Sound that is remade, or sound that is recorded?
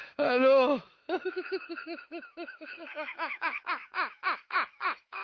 remade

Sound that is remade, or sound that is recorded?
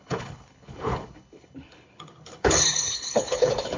remade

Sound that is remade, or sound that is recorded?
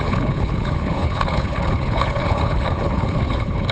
remade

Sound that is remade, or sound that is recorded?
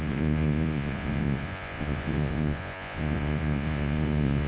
remade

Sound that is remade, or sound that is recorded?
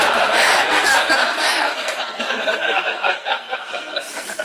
remade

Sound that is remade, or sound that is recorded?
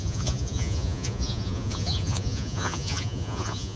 remade